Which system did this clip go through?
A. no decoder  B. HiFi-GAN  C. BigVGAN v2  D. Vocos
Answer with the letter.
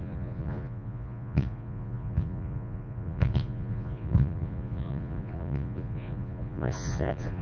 D